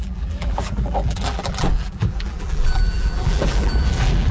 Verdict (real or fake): fake